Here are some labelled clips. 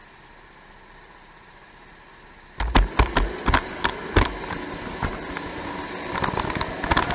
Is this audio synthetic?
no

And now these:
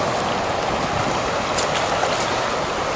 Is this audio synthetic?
no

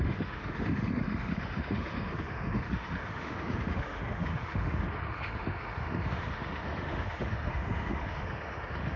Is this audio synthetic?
yes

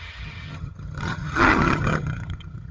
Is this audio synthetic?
yes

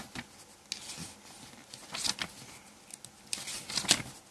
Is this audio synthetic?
no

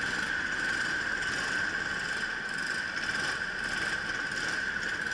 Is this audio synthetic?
no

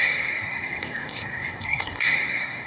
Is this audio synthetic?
yes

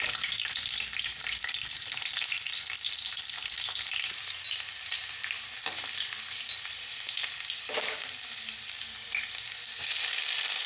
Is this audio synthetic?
yes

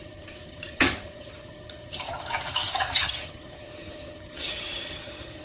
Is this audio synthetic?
yes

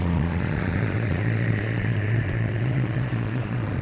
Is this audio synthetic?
yes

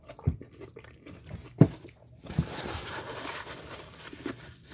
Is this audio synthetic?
no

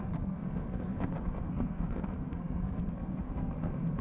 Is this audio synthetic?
yes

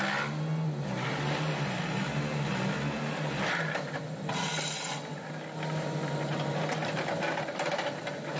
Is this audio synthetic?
no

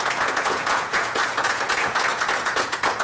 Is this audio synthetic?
yes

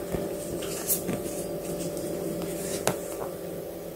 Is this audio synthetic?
no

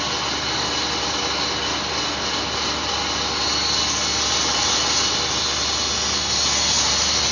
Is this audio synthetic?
no